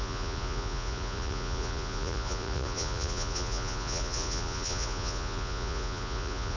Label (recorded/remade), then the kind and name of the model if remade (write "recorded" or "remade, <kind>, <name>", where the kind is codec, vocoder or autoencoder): remade, vocoder, Vocos